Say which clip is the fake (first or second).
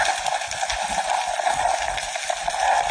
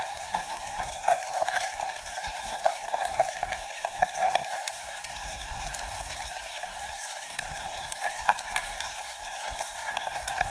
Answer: second